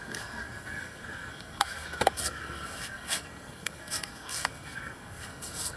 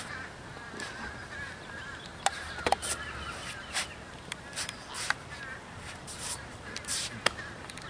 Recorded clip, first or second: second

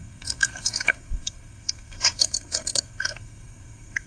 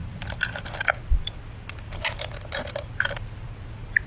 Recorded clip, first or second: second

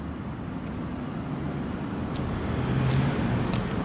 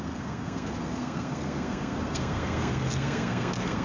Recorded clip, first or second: first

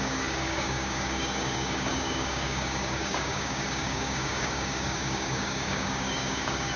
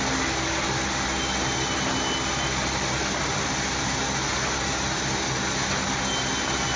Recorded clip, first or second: second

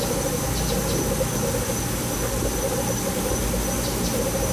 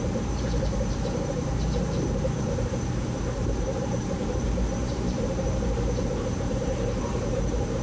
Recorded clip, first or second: first